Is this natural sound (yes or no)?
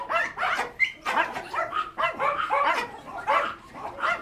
no